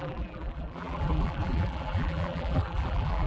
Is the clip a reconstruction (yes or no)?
yes